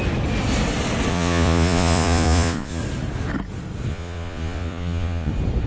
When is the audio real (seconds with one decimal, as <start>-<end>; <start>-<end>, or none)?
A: 0.0-1.1; 2.8-3.9; 5.3-5.7